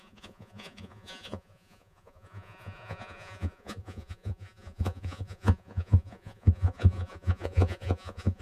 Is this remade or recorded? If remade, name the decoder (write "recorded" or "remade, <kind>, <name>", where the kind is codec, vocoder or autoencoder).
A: remade, vocoder, Vocos